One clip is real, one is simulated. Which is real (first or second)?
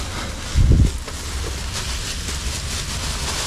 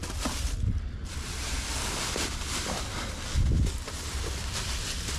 first